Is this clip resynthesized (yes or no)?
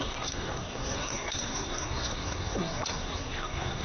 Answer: yes